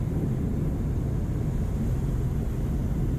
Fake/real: real